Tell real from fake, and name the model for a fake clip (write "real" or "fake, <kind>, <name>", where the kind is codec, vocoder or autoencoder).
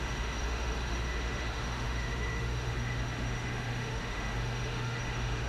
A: fake, autoencoder, DAC-VAE